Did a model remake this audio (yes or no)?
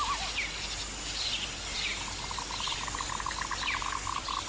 no